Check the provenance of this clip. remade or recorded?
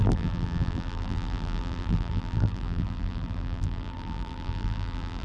remade